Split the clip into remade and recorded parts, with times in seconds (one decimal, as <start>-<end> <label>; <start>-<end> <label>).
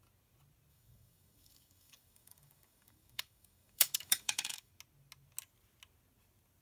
0.0-0.7 recorded; 0.7-4.7 remade; 4.7-6.6 recorded